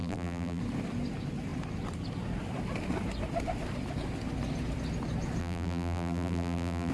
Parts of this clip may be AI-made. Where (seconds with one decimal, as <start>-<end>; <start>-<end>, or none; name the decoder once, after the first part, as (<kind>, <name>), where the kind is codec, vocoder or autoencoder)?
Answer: 0.0-0.6 (vocoder, BigVGAN v2); 5.4-6.9